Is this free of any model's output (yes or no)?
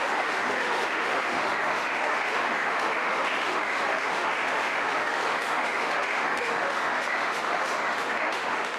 no